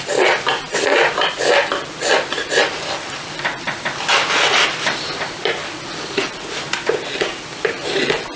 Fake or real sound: fake